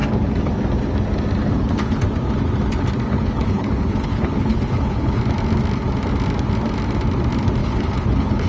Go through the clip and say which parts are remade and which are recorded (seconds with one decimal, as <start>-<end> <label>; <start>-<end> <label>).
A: 0.0-1.4 recorded; 1.4-2.0 remade; 2.0-3.1 recorded; 3.1-5.2 remade; 5.2-7.6 recorded; 7.6-8.5 remade